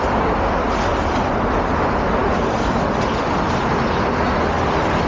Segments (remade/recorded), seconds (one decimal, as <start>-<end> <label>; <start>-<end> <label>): 0.0-2.2 recorded; 2.2-3.7 remade; 3.7-5.1 recorded